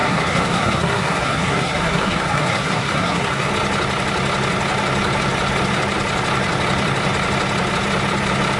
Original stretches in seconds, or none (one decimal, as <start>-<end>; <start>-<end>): 3.5-8.6